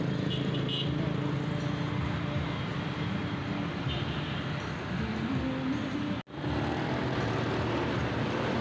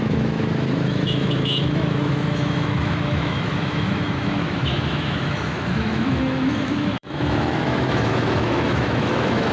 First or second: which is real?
first